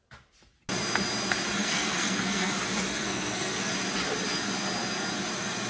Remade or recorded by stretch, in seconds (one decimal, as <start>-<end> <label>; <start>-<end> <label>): 0.0-1.6 recorded; 1.6-2.5 remade; 2.5-2.9 recorded; 2.9-3.7 remade; 3.7-5.7 recorded